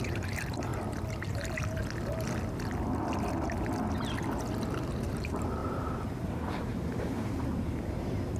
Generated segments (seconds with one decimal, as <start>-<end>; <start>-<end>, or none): 0.0-0.7; 1.3-1.8; 5.1-8.4